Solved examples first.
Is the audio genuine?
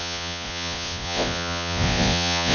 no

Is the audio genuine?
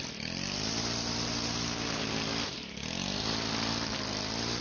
yes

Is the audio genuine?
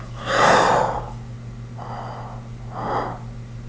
yes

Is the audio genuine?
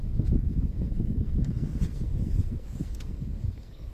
no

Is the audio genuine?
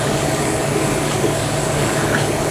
no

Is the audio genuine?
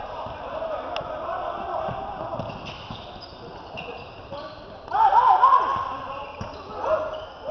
yes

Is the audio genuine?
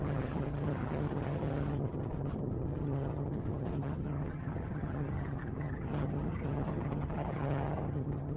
no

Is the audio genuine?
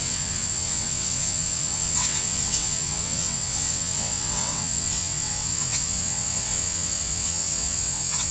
no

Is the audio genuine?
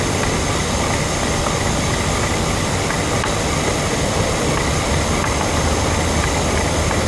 yes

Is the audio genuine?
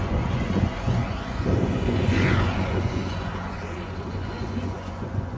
no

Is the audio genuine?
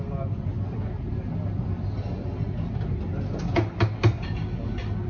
yes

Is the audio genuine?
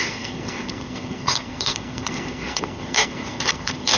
no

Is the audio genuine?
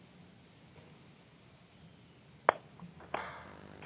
yes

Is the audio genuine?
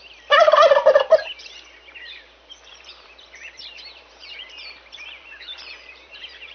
no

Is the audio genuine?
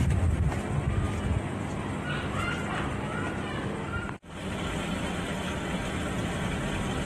no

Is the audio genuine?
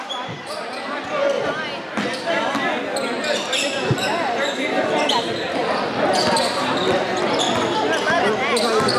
yes